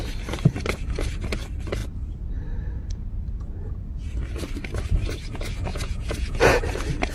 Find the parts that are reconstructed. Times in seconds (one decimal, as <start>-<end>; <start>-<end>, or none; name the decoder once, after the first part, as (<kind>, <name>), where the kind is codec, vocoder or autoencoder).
5.7-6.6 (vocoder, Vocos)